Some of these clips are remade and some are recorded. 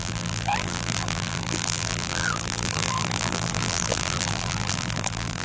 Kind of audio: remade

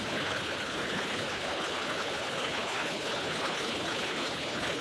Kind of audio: remade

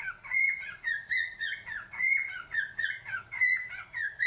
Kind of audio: remade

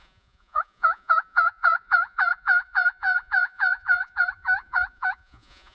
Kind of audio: remade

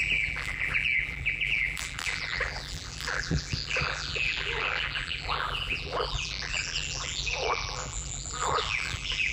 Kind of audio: remade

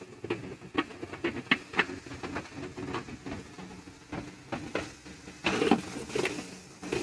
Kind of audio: recorded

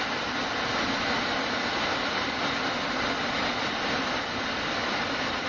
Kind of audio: recorded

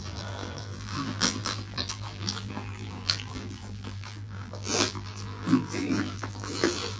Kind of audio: remade